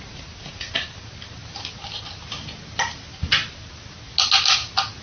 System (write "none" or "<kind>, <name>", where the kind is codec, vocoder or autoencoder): none